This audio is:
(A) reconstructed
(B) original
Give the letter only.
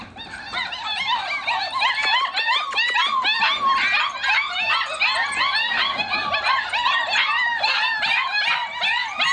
B